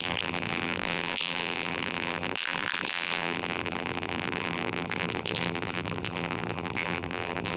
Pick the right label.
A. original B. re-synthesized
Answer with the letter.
B